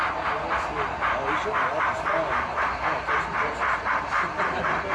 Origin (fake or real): real